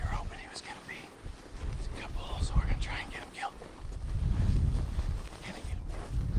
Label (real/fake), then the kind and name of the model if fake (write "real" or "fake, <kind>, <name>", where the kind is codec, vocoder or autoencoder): real